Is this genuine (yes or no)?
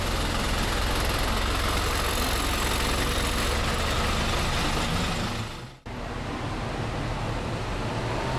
yes